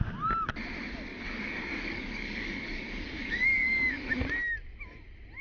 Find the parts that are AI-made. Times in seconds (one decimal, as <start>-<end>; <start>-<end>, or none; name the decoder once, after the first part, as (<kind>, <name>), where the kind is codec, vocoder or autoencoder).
1.1-4.1 (codec, DAC)